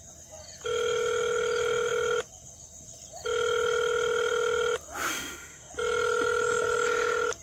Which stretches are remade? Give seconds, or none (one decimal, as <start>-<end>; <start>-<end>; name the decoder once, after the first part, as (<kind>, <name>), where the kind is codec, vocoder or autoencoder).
5.1-5.7 (autoencoder, DAC-VAE)

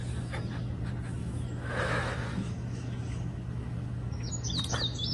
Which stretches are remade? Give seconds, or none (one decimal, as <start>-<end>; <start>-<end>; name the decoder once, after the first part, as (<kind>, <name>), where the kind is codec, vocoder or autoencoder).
1.2-4.3 (autoencoder, DAC-VAE)

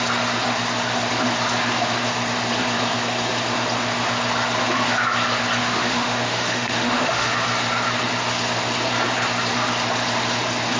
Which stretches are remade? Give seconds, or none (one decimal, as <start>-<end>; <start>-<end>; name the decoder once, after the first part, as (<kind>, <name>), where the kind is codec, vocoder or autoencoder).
5.6-7.3 (autoencoder, DAC-VAE)

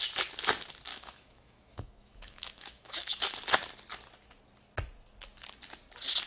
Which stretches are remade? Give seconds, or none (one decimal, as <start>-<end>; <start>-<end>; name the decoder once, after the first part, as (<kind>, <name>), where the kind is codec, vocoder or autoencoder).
0.9-3.2 (autoencoder, DAC-VAE)

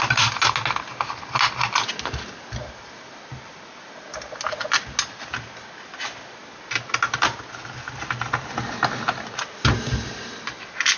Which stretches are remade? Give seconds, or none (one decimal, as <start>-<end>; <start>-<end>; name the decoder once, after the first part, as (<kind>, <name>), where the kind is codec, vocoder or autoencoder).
none

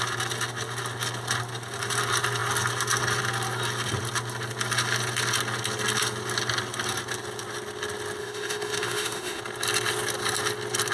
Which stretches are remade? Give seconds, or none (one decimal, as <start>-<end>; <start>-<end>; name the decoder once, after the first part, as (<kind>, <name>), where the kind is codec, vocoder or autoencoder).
8.2-9.4 (autoencoder, DAC-VAE)